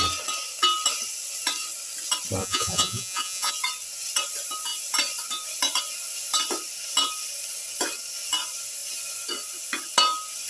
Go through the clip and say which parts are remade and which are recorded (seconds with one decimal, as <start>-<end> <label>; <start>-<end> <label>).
0.0-2.4 recorded; 2.4-3.5 remade; 3.5-10.5 recorded